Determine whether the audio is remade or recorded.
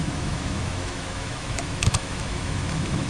remade